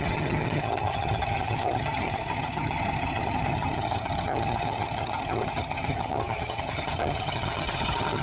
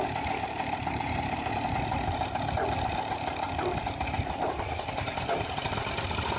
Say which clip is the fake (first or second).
first